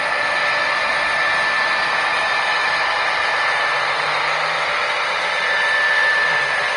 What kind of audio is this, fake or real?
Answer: real